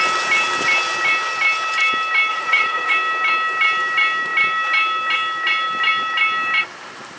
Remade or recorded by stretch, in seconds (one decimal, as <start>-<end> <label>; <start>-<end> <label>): 0.0-2.3 recorded; 2.3-2.9 remade; 2.9-7.2 recorded